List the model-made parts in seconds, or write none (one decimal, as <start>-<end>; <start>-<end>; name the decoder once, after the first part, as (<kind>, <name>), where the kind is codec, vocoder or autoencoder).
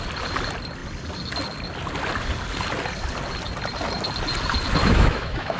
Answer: 4.8-5.6 (autoencoder, DAC-VAE)